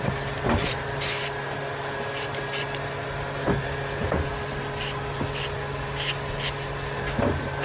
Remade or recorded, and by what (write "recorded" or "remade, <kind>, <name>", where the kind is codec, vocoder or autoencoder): remade, vocoder, BigVGAN v2